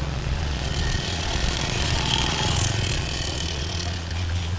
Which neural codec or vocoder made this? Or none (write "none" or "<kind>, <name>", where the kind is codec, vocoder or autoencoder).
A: vocoder, Vocos